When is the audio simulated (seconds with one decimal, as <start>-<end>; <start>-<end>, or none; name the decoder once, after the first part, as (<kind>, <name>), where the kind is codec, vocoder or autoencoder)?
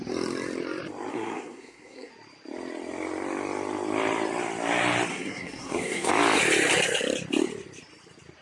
1.1-2.1 (codec, SNAC); 5.1-6.1